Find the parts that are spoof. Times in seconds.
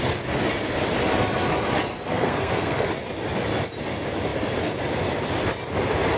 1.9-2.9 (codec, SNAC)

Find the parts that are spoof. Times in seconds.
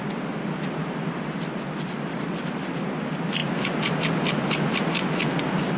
none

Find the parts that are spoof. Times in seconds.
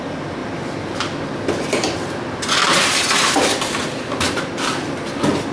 none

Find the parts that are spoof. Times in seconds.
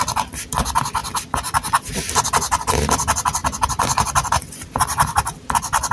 none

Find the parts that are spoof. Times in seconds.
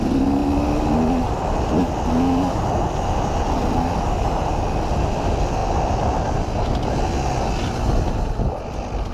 none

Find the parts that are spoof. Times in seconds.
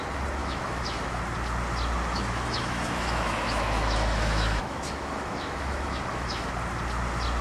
0.4-1.2 (autoencoder, DAC-VAE); 2.1-6.5